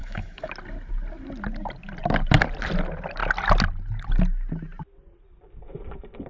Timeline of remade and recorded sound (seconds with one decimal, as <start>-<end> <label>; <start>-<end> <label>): 0.0-0.5 remade; 0.5-6.3 recorded